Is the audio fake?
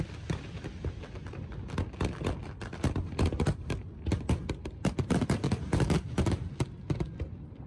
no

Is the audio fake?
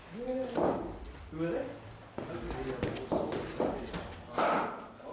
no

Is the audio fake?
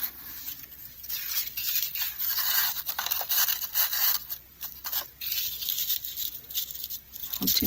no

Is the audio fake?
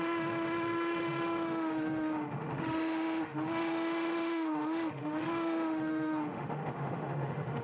yes